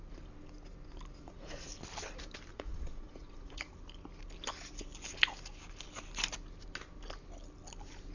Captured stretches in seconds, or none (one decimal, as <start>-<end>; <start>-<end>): 0.0-1.2; 1.7-2.5; 3.7-8.1